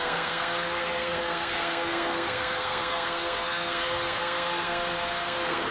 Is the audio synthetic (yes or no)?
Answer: yes